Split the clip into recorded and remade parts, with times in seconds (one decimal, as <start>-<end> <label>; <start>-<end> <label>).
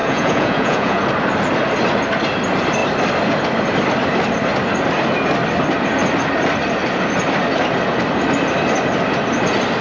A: 0.0-1.0 remade; 1.0-9.8 recorded